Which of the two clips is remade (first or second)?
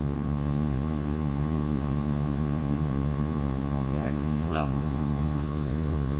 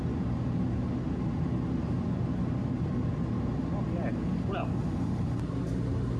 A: first